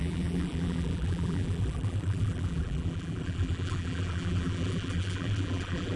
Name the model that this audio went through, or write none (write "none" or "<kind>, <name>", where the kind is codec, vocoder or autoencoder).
vocoder, BigVGAN v2